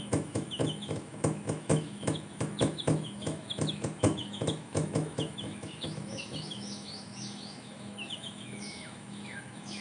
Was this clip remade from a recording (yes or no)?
yes